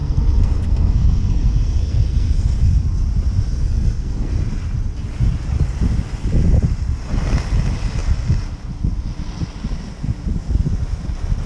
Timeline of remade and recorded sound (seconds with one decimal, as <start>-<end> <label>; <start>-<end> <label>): 0.0-2.7 remade; 2.7-3.5 recorded; 3.5-4.3 remade; 4.3-11.5 recorded